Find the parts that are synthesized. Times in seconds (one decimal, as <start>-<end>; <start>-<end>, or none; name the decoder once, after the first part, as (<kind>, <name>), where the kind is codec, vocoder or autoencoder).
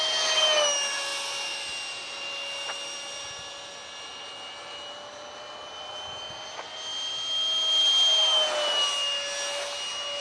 none